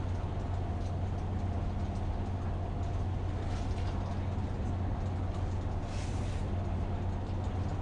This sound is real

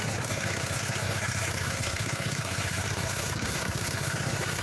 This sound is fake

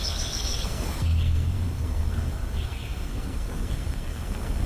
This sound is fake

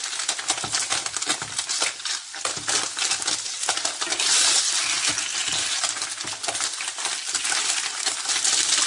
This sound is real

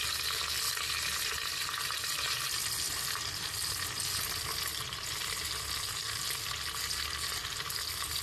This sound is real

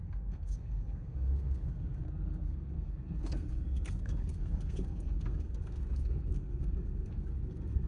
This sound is fake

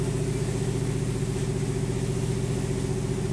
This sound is real